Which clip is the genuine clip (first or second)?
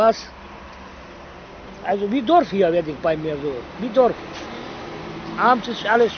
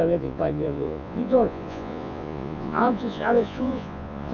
first